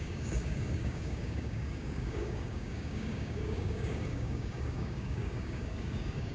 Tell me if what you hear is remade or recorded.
remade